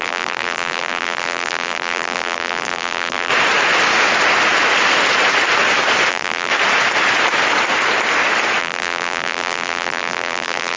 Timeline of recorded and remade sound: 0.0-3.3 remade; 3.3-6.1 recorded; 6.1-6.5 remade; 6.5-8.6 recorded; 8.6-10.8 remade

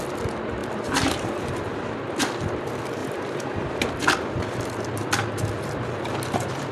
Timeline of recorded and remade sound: 0.0-0.6 recorded; 0.6-2.0 remade; 2.0-3.0 recorded; 3.0-4.0 remade; 4.0-6.7 recorded

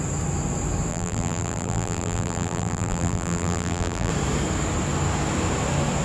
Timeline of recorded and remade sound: 0.0-0.9 recorded; 0.9-4.1 remade; 4.1-6.0 recorded

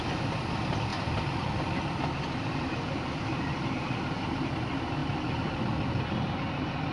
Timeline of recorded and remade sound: 0.0-0.9 recorded; 0.9-4.5 remade; 4.5-6.9 recorded

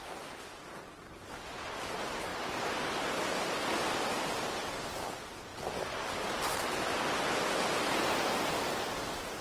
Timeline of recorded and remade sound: 0.0-2.3 recorded; 2.3-3.1 remade; 3.1-9.4 recorded

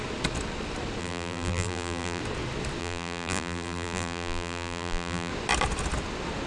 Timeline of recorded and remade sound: 0.0-1.0 recorded; 1.0-2.2 remade; 2.2-2.8 recorded; 2.8-5.3 remade; 5.3-6.5 recorded

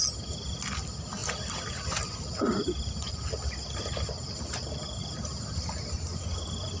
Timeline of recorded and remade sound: 0.0-5.0 recorded; 5.0-6.8 remade